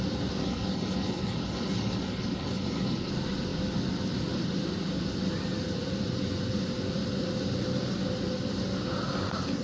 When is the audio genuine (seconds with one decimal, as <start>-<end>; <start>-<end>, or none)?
0.0-0.4; 3.1-9.6